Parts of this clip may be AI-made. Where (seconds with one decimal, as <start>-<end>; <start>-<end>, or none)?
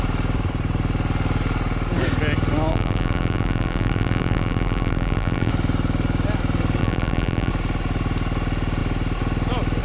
2.7-5.5; 6.8-7.5